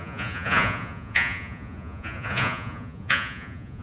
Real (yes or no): no